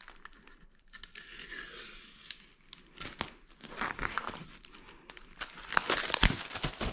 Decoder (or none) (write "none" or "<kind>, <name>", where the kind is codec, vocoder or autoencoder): none